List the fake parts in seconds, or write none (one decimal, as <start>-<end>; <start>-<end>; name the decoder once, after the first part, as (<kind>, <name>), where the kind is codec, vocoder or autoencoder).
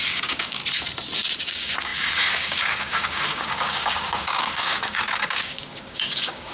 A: 0.0-0.6 (codec, DAC); 1.4-6.5